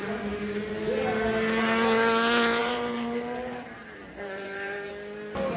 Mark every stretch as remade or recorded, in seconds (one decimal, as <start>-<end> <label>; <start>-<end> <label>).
0.0-2.6 recorded; 2.6-4.9 remade; 4.9-5.6 recorded